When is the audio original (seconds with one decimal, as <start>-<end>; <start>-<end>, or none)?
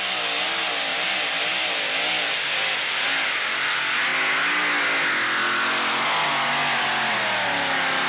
0.0-0.9; 2.9-8.1